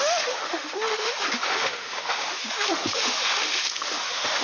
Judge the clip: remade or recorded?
remade